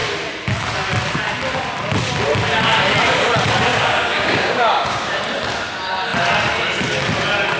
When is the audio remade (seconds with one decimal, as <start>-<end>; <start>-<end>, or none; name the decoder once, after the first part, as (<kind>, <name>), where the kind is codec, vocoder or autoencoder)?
3.7-5.2 (codec, DAC)